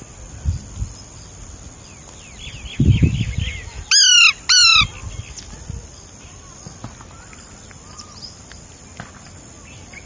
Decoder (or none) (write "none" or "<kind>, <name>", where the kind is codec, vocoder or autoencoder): none